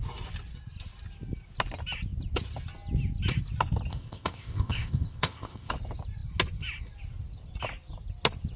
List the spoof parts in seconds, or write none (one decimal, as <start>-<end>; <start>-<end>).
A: 3.9-5.7